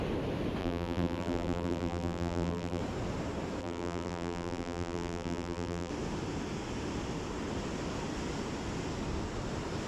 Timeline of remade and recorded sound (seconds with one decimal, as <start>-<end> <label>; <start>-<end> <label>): 0.0-0.6 recorded; 0.6-2.8 remade; 2.8-3.6 recorded; 3.6-5.9 remade; 5.9-9.9 recorded